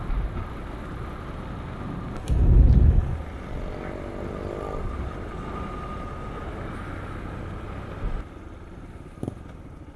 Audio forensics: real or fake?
real